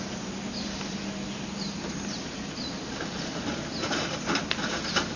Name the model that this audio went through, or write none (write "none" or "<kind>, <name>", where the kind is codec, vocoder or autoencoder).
none